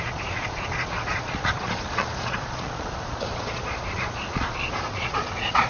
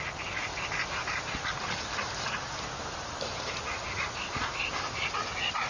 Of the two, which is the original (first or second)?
second